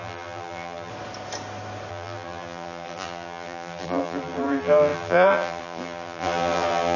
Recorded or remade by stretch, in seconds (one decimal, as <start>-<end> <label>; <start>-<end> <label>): 0.0-0.9 remade; 0.9-1.9 recorded; 1.9-7.0 remade